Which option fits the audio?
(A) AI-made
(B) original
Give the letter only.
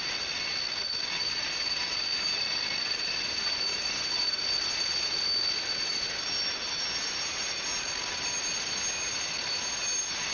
B